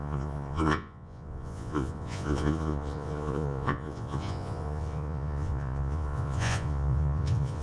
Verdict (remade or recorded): remade